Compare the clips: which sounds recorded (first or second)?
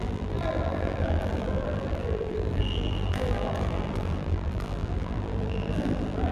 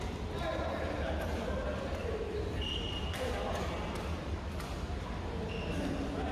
second